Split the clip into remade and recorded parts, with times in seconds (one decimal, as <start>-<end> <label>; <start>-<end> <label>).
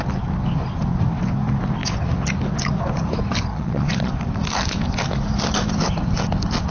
0.0-3.5 recorded; 3.5-4.1 remade; 4.1-6.7 recorded